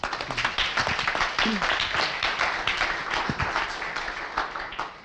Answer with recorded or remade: recorded